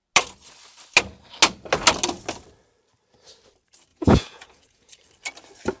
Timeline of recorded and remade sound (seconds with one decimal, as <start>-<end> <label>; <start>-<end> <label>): 0.0-3.9 recorded; 3.9-4.9 remade; 4.9-5.8 recorded